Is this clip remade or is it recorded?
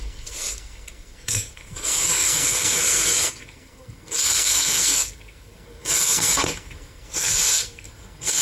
remade